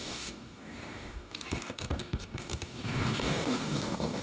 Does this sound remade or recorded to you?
remade